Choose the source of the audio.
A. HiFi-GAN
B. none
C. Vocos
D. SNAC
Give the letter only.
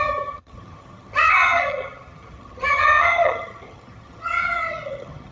A